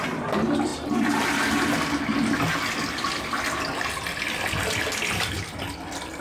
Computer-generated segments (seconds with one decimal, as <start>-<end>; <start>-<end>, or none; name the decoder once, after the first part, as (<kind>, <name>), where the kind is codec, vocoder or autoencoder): none